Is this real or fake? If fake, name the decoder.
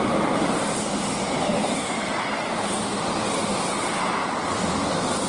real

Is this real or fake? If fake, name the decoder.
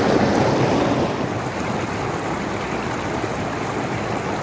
real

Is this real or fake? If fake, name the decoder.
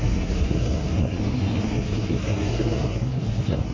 fake, codec, SNAC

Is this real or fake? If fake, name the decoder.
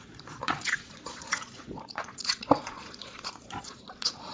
fake, vocoder, Vocos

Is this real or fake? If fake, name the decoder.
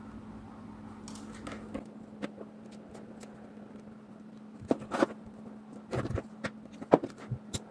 real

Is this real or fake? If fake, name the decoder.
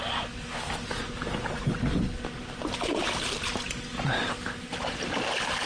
real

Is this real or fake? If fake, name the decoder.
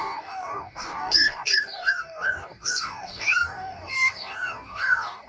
fake, codec, DAC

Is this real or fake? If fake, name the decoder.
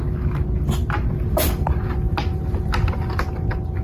real